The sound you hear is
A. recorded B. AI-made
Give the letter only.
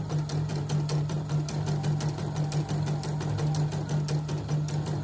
A